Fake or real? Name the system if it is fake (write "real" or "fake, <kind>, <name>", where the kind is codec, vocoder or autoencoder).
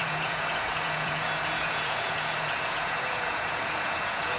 fake, vocoder, Vocos